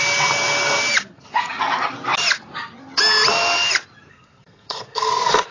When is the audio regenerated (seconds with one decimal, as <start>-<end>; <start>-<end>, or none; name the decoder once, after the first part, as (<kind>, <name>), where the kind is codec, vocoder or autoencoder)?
4.1-5.1 (codec, SNAC)